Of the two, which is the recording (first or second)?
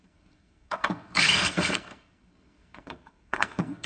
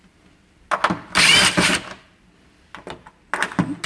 second